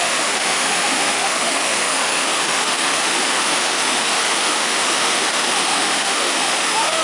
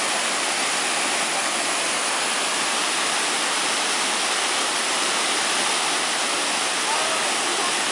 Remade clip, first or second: first